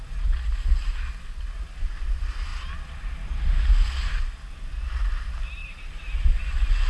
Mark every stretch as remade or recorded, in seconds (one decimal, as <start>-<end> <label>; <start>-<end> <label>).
0.0-6.9 recorded